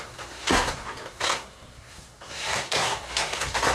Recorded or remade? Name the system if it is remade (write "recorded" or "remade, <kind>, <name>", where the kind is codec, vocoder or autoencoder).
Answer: remade, codec, SNAC